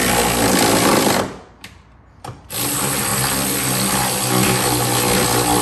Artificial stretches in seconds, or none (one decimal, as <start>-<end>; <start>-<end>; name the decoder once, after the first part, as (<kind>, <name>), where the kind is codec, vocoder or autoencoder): none